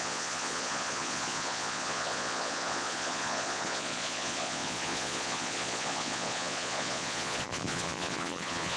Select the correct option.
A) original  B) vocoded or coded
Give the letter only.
B